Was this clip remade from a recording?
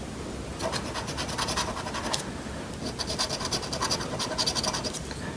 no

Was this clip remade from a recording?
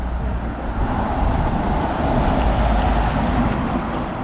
no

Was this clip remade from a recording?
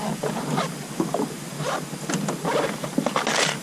no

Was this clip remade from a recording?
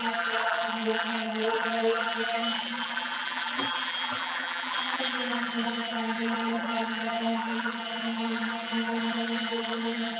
yes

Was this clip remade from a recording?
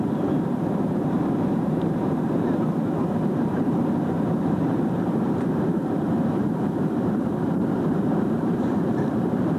yes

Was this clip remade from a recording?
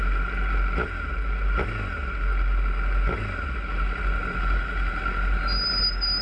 no